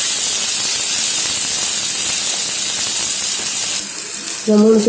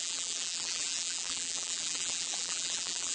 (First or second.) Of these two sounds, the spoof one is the second